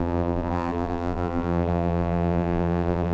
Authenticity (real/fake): fake